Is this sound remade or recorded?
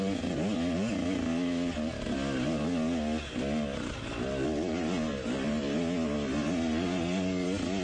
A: recorded